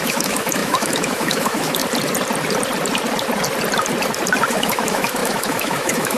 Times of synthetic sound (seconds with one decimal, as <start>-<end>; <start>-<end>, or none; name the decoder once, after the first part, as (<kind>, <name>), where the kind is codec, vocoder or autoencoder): 0.0-1.8 (autoencoder, DAC-VAE); 4.5-6.2